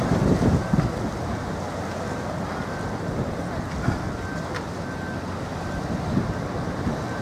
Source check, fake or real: real